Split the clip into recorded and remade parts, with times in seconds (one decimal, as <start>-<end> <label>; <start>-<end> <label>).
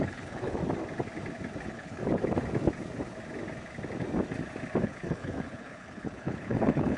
0.0-0.6 remade; 0.6-1.6 recorded; 1.6-2.0 remade; 2.0-4.8 recorded; 4.8-7.0 remade